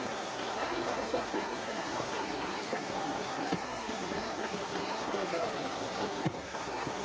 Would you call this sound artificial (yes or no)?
yes